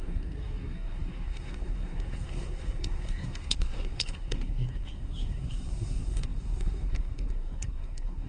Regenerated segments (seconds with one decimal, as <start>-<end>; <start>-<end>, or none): 0.0-8.3

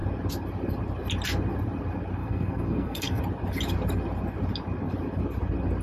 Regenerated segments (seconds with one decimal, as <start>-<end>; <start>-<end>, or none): 2.2-3.2

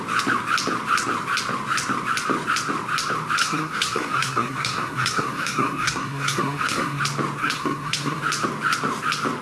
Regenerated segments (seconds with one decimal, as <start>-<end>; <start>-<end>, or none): 3.4-7.0; 7.4-8.2

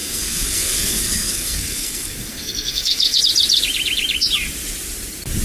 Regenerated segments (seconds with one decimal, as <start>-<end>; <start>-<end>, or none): 0.0-3.2